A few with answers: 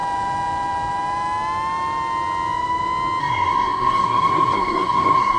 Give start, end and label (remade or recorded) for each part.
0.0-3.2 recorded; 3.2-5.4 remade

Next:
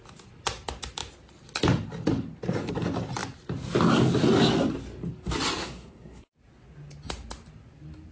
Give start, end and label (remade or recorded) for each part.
0.0-5.6 recorded; 5.6-6.2 remade; 6.2-8.1 recorded

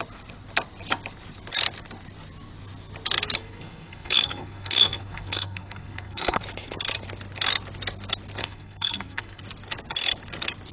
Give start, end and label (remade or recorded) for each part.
0.0-3.4 recorded; 3.4-6.4 remade; 6.4-8.4 recorded; 8.4-9.4 remade; 9.4-10.7 recorded